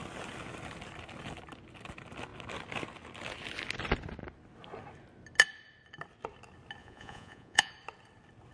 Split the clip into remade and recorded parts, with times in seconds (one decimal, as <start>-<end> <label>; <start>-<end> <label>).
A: 0.0-6.8 recorded; 6.8-7.7 remade; 7.7-8.5 recorded